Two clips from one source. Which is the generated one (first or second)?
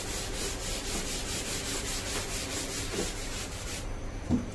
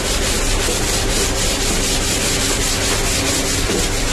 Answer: first